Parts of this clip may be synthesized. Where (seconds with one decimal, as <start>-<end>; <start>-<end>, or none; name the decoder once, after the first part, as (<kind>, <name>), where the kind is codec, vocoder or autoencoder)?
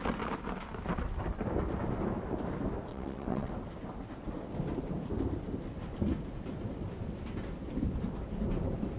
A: 2.9-3.5 (vocoder, WaveNeXt)